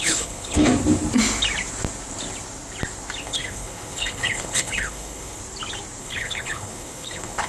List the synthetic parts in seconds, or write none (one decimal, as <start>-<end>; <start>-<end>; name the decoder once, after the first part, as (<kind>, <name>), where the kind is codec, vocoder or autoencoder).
0.0-0.7 (codec, HILCodec); 3.2-5.4; 6.0-7.5